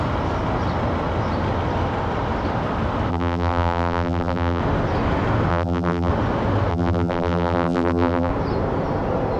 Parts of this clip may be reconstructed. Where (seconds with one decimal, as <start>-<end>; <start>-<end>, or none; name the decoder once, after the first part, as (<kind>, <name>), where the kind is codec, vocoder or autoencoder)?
3.1-4.6 (vocoder, BigVGAN v2); 5.5-6.1; 6.7-8.3